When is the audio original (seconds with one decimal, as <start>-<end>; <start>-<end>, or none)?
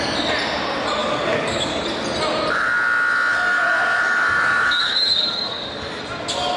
0.0-1.0; 1.8-3.3; 6.0-6.6